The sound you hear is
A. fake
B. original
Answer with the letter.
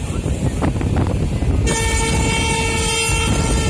B